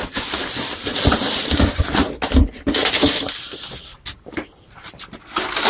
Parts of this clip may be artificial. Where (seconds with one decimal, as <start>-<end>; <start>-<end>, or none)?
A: none